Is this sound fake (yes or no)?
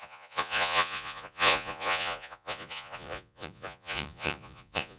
yes